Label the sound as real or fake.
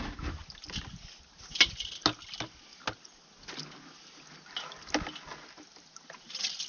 real